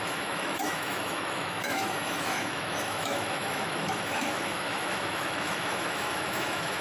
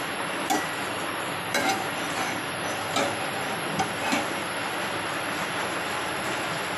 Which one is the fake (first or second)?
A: first